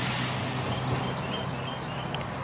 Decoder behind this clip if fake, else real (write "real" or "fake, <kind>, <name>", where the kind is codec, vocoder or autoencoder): real